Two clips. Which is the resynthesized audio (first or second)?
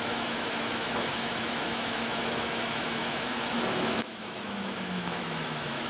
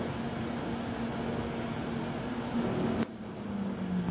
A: first